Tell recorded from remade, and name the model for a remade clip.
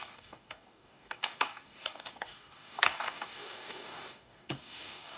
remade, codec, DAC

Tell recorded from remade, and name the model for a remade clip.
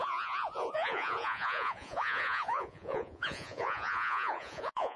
remade, vocoder, Vocos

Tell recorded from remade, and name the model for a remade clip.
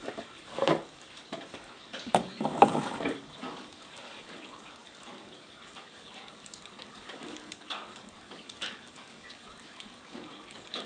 remade, codec, DAC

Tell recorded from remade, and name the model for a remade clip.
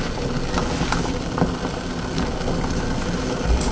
recorded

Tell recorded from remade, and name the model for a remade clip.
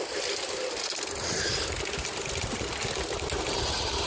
recorded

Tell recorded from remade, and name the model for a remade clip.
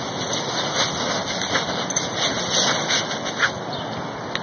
recorded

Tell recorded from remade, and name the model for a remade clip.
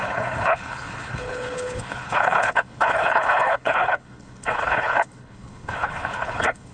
remade, codec, HILCodec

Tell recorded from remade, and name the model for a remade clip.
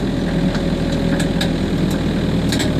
recorded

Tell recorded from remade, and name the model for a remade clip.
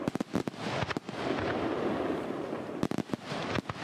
recorded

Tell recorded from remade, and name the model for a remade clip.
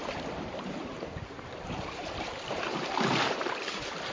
remade, vocoder, BigVGAN v2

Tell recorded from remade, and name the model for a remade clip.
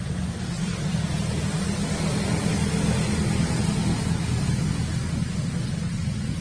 recorded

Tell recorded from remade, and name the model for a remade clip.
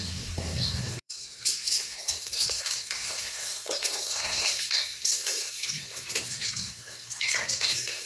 remade, codec, SNAC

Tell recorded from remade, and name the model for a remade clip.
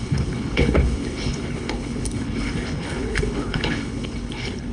remade, codec, HILCodec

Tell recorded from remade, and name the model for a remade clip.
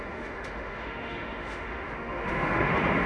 remade, autoencoder, DAC-VAE